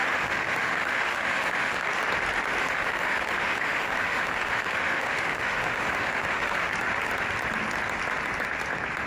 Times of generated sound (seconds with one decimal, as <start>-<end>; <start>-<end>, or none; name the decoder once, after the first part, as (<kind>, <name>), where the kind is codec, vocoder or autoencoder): 0.0-1.9 (autoencoder, DAC-VAE); 2.6-6.7

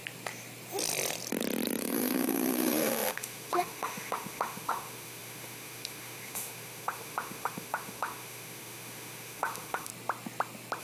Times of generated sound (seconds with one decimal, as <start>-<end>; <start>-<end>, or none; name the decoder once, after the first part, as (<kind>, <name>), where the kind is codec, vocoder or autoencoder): 1.8-9.9 (autoencoder, DAC-VAE)

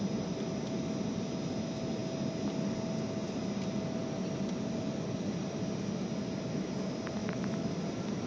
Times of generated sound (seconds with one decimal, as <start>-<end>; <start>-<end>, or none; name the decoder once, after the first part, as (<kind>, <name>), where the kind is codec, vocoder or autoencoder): 7.2-7.7 (autoencoder, DAC-VAE)

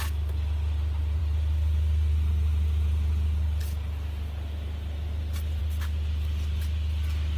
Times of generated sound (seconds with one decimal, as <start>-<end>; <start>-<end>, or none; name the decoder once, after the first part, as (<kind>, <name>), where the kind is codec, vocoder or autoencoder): none